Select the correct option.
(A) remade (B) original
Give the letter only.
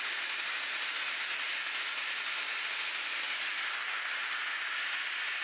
B